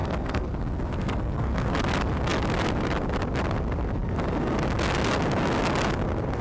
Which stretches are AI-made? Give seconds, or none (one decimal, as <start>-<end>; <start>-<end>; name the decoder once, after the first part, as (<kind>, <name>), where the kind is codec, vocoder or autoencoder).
0.0-1.7 (codec, SNAC)